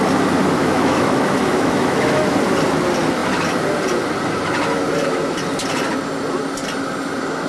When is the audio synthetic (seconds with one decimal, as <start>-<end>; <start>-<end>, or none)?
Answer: 0.6-2.4